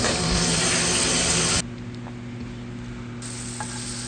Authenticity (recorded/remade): recorded